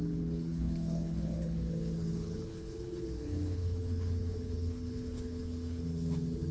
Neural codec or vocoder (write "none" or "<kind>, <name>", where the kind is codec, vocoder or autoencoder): codec, HILCodec